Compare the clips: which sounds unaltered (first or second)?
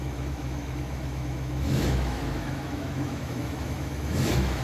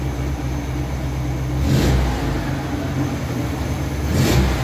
second